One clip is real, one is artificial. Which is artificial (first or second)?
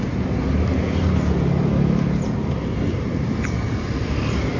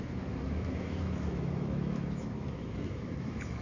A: second